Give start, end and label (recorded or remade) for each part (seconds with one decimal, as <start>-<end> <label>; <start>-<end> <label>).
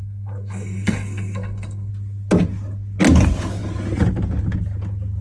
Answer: 0.0-1.9 remade; 1.9-5.2 recorded